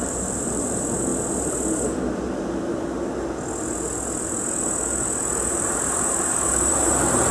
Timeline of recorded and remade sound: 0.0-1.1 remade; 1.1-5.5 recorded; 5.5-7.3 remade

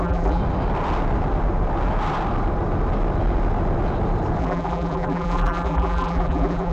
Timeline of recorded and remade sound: 0.0-0.4 remade; 0.4-4.4 recorded; 4.4-6.7 remade

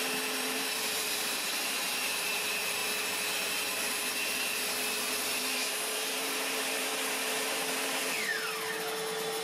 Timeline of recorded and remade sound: 0.0-2.8 remade; 2.8-5.4 recorded; 5.4-8.3 remade; 8.3-9.4 recorded

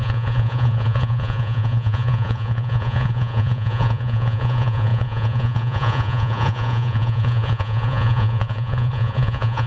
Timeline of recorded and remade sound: 0.0-9.7 remade